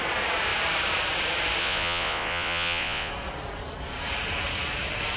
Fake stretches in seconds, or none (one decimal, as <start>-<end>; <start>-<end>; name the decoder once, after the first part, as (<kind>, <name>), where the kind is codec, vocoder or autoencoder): 1.6-3.1 (vocoder, Vocos)